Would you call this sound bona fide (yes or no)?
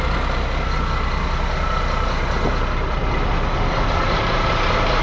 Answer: yes